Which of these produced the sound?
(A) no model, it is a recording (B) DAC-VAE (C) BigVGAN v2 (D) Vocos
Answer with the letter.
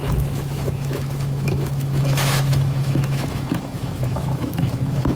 B